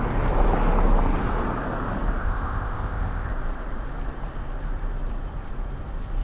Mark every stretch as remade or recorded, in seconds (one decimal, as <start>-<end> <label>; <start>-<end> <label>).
0.0-2.2 recorded; 2.2-3.3 remade; 3.3-6.2 recorded